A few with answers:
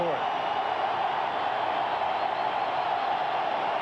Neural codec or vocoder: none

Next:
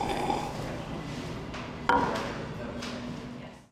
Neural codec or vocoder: none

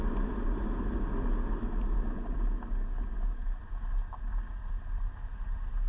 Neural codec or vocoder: none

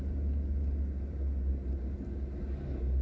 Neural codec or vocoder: none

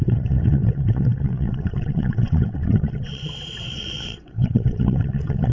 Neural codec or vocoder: vocoder, WaveNeXt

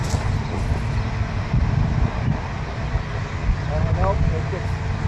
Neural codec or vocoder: none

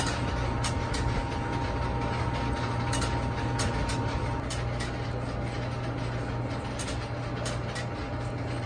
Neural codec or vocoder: none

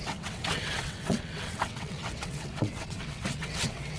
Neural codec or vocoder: vocoder, WaveNeXt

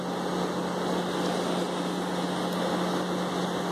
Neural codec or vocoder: none